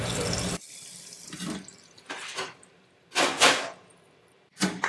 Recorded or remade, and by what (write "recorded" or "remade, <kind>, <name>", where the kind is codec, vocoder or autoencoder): remade, vocoder, BigVGAN v2